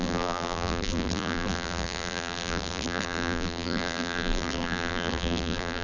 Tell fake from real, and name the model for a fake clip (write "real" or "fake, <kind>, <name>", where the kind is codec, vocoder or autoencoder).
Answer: fake, vocoder, BigVGAN v2